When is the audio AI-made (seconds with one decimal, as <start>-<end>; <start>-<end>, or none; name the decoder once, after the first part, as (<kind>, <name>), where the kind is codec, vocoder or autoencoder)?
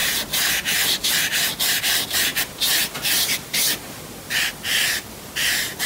none